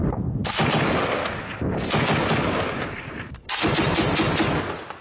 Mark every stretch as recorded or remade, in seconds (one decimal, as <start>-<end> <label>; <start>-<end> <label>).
0.0-5.0 recorded